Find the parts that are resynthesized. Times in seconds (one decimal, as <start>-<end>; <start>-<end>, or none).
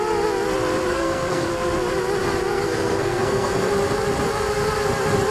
0.9-1.5; 2.5-3.7